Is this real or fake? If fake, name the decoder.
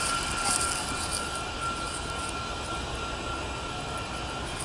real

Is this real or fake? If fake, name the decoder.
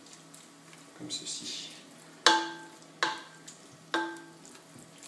real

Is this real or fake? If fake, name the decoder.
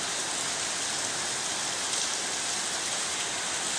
real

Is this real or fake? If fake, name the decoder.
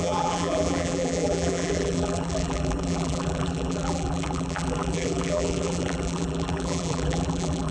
fake, vocoder, BigVGAN v2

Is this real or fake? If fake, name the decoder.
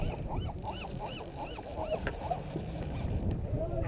fake, vocoder, BigVGAN v2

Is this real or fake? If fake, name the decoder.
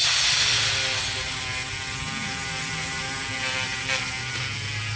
real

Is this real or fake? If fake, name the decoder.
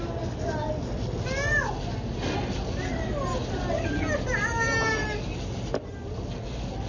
real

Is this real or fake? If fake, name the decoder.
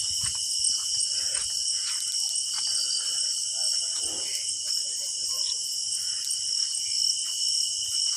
real